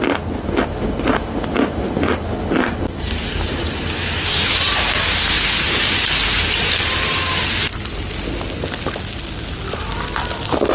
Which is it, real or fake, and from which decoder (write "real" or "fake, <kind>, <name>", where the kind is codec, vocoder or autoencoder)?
real